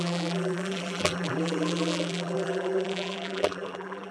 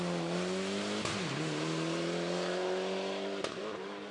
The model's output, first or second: first